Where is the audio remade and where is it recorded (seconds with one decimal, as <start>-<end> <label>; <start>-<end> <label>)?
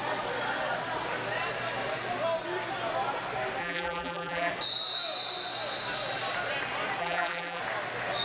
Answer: 0.0-3.6 recorded; 3.6-4.5 remade; 4.5-7.0 recorded; 7.0-7.6 remade; 7.6-8.2 recorded